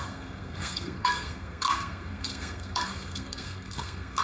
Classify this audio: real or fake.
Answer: fake